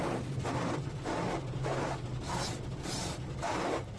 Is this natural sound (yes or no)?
yes